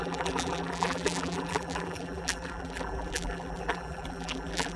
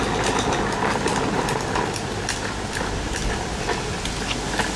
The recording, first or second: second